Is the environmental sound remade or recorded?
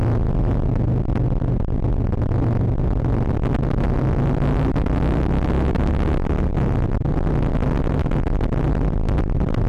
recorded